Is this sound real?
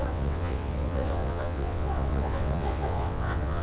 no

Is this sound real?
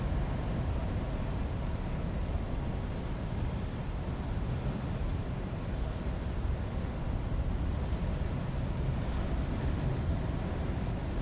yes